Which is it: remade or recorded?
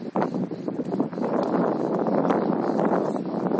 recorded